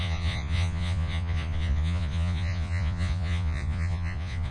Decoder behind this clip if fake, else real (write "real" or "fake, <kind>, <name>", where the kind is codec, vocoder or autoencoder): fake, vocoder, Vocos